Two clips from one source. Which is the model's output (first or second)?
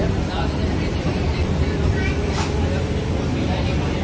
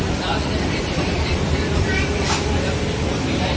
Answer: second